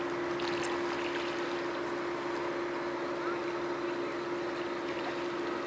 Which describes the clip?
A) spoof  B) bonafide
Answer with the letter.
B